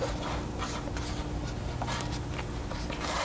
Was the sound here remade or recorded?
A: recorded